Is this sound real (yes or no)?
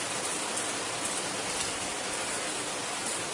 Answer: yes